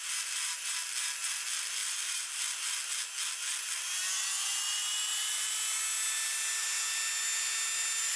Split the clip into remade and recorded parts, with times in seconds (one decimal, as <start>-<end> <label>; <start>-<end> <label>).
0.0-8.2 recorded